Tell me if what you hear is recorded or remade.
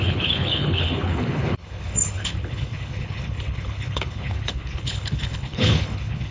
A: remade